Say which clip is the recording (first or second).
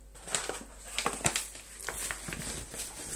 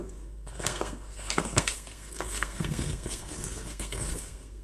first